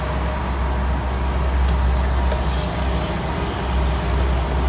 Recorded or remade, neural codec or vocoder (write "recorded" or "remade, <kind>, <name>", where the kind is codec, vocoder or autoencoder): recorded